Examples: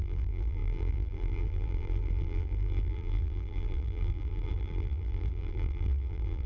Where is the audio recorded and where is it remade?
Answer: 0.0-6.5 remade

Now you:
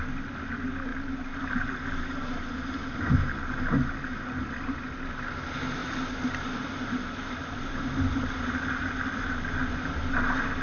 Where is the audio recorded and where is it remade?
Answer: 0.0-5.8 recorded; 5.8-9.4 remade; 9.4-10.6 recorded

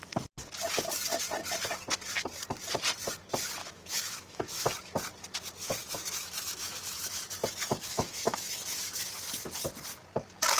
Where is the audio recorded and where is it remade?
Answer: 0.0-3.6 recorded; 3.6-4.6 remade; 4.6-5.8 recorded; 5.8-7.3 remade; 7.3-7.7 recorded; 7.7-9.0 remade; 9.0-10.6 recorded